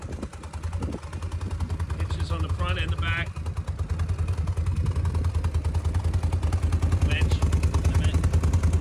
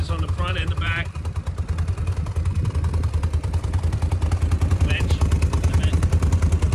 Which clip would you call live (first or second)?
first